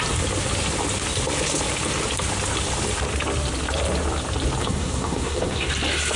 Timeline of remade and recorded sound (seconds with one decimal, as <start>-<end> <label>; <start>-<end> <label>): 0.0-4.6 recorded; 4.6-5.7 remade; 5.7-6.2 recorded